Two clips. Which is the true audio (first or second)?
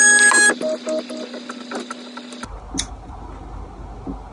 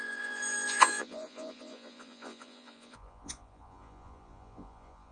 first